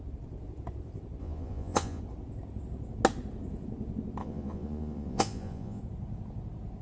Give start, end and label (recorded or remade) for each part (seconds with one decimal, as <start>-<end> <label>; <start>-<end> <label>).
0.0-1.2 recorded; 1.2-2.0 remade; 2.0-4.2 recorded; 4.2-5.8 remade; 5.8-6.8 recorded